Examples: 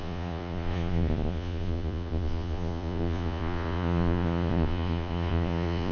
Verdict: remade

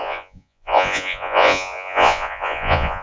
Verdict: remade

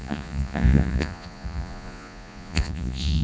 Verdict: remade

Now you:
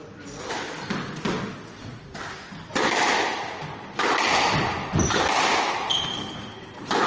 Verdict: recorded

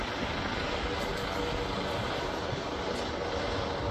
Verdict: recorded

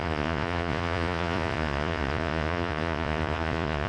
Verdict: remade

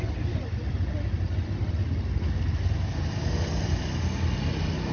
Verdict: recorded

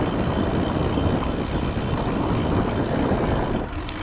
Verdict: recorded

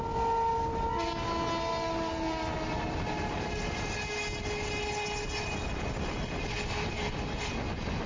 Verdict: recorded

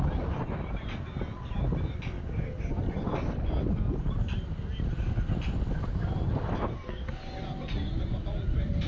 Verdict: recorded